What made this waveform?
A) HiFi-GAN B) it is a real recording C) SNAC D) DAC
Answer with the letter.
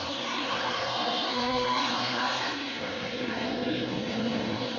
C